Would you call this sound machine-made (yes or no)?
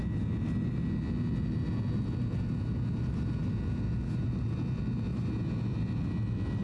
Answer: no